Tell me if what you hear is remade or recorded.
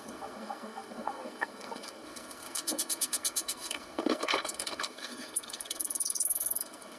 remade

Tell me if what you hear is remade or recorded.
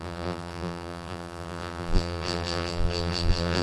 remade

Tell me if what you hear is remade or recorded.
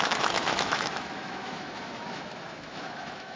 remade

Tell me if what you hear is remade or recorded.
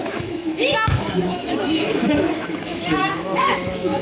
remade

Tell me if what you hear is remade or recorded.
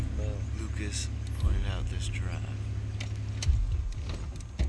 recorded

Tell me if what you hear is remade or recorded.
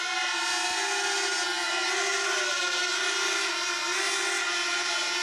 recorded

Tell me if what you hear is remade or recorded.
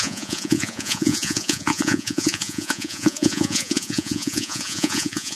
remade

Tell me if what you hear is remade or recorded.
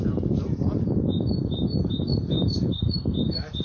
recorded